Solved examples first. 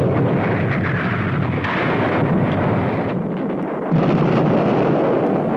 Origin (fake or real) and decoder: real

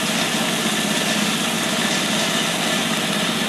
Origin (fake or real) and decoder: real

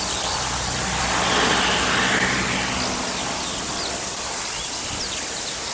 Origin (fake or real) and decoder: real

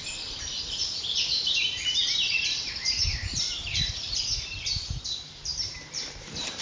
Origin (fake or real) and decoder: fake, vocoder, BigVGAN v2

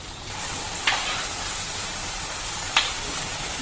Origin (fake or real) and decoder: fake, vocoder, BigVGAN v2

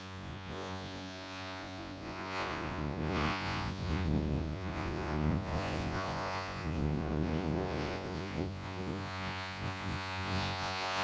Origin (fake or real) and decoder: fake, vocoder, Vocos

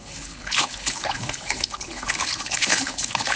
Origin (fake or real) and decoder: fake, codec, HILCodec